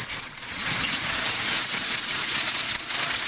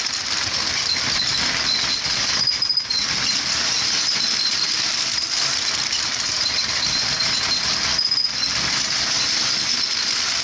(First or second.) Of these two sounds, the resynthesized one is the first